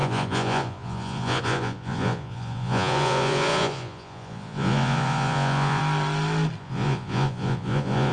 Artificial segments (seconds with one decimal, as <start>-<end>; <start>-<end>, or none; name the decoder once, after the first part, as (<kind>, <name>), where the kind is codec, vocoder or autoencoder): 0.0-5.8 (vocoder, Vocos); 6.6-8.1